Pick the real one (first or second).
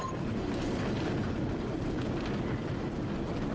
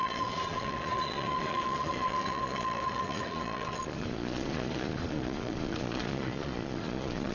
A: first